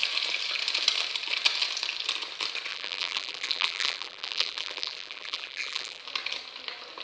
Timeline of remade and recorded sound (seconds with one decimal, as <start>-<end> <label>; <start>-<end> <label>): 0.0-2.7 recorded; 2.7-6.0 remade; 6.0-7.0 recorded